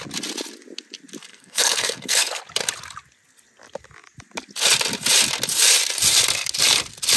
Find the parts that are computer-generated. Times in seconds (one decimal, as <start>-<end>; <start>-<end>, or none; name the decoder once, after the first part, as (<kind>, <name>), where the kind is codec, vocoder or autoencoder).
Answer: 1.3-2.4 (codec, SNAC)